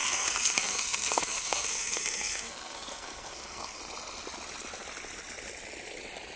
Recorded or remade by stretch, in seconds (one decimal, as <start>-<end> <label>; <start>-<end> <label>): 0.0-3.8 remade; 3.8-6.4 recorded